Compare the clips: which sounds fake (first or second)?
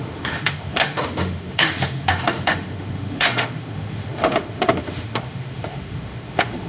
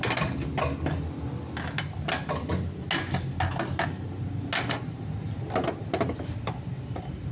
first